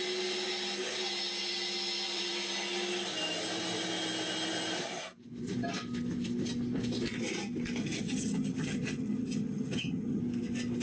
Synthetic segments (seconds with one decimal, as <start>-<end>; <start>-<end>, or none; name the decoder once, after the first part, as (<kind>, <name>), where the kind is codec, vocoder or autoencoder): 7.8-10.2 (vocoder, HiFi-GAN)